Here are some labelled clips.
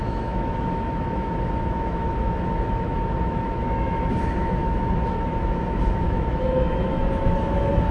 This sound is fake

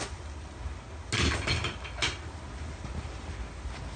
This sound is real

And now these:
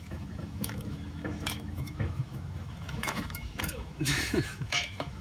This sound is fake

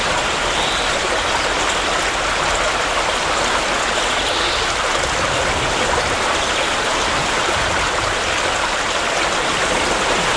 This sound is real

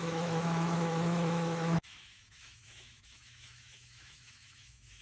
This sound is fake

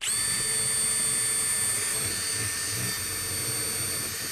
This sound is real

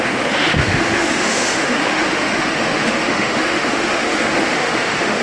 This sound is fake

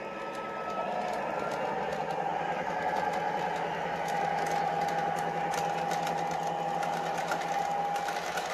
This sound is real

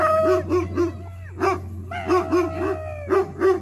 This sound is real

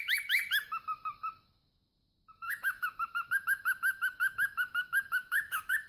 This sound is fake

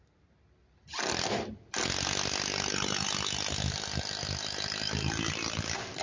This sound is real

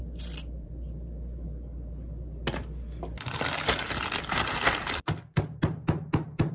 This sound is real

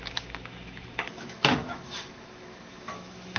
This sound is fake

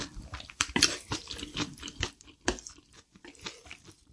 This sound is real